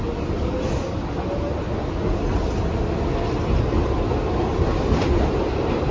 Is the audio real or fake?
real